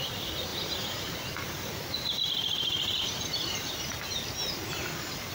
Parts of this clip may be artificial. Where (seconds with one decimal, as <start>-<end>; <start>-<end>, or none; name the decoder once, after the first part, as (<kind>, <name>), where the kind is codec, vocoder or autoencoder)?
0.5-3.7 (vocoder, BigVGAN v2)